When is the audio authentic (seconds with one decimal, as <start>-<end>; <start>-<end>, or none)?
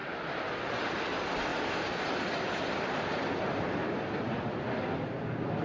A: 0.0-1.5; 4.9-5.6